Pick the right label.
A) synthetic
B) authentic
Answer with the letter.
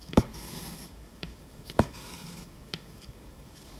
A